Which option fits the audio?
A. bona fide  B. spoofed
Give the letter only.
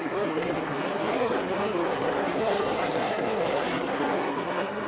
B